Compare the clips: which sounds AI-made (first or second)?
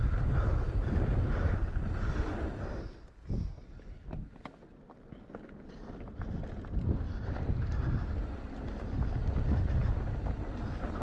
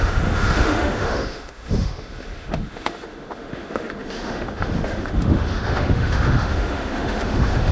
second